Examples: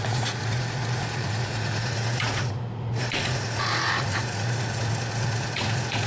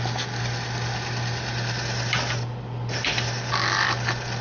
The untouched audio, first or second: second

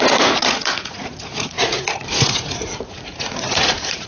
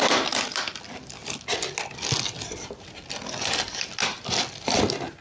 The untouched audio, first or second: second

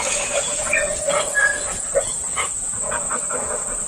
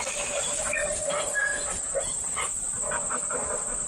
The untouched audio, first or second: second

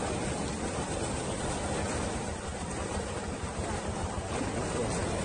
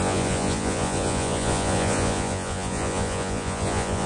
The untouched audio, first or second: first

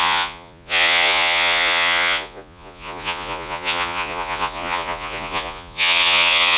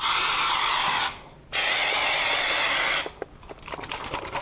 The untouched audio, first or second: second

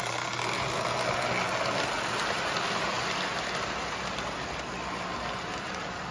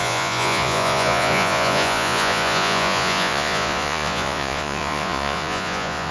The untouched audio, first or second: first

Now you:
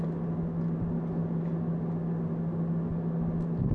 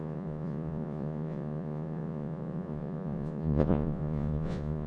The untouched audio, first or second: first